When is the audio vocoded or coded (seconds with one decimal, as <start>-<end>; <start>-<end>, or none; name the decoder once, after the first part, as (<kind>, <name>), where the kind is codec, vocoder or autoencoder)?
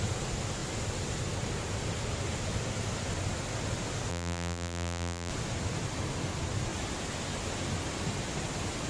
4.1-5.3 (vocoder, BigVGAN v2)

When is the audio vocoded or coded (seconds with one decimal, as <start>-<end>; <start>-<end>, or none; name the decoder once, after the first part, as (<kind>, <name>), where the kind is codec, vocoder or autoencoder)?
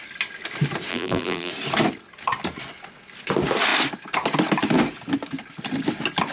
0.9-1.5 (vocoder, BigVGAN v2)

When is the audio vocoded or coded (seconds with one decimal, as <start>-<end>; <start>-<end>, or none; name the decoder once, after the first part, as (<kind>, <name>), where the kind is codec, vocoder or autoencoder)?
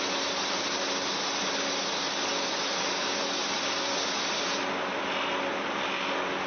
none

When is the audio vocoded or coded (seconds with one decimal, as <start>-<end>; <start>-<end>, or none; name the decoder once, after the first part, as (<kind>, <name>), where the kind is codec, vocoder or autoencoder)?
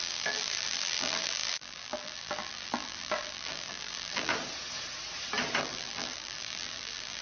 0.0-4.3 (vocoder, BigVGAN v2); 5.6-7.2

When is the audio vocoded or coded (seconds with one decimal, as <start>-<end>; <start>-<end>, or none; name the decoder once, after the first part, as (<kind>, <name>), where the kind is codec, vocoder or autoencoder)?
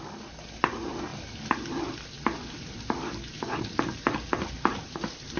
0.0-5.4 (vocoder, BigVGAN v2)